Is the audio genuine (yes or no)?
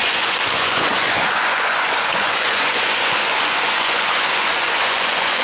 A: no